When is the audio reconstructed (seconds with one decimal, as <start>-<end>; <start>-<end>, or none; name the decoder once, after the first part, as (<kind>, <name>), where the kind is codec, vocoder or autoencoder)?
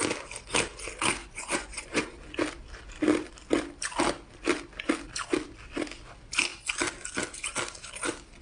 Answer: 1.2-2.0 (vocoder, Vocos)